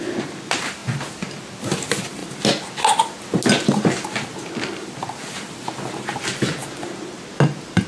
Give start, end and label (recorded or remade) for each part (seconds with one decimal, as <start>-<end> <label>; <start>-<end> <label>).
0.0-7.9 recorded